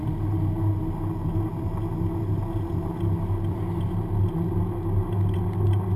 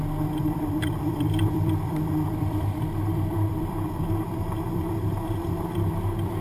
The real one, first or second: first